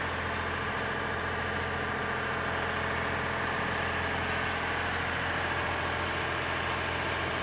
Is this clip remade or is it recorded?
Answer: recorded